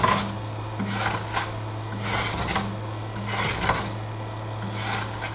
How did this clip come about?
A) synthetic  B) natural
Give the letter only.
B